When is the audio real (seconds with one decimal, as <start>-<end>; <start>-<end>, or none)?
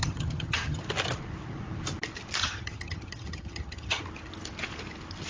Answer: 0.8-2.4; 4.0-5.3